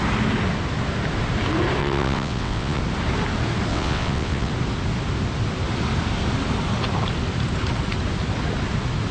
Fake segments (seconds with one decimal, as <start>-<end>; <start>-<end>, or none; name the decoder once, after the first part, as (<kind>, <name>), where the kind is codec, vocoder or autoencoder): 1.8-2.8 (vocoder, WaveNeXt); 3.7-4.5